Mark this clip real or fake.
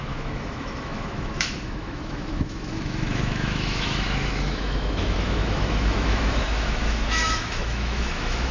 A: fake